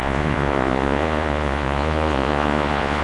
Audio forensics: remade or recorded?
remade